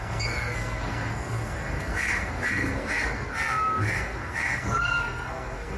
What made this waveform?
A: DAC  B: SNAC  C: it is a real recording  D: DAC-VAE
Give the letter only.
B